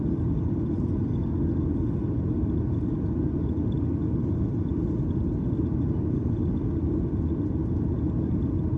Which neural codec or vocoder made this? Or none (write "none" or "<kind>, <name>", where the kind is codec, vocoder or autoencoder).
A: none